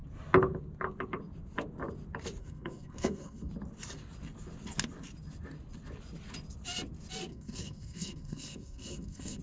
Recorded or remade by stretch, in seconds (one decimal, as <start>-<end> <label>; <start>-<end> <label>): 0.0-2.4 recorded; 2.4-3.5 remade; 3.5-7.3 recorded; 7.3-9.4 remade